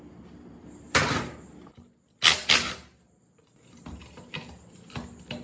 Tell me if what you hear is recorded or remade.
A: recorded